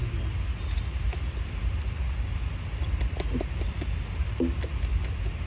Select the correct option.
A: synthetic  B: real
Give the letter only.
B